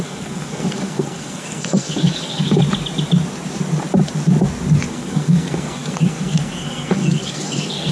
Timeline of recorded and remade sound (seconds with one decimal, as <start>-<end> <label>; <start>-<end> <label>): 0.0-2.6 remade; 2.6-4.9 recorded; 4.9-7.9 remade